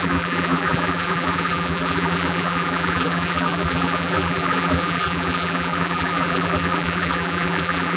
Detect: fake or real fake